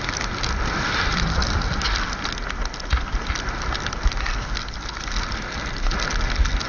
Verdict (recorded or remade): recorded